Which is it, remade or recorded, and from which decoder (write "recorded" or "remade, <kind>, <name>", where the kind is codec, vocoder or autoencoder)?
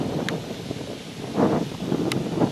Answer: recorded